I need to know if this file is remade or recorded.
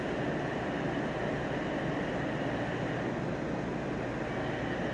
recorded